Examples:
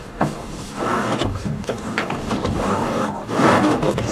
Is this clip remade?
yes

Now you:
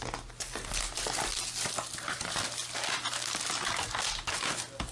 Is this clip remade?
no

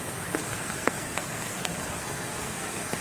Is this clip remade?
yes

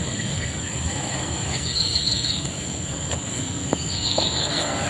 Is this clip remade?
yes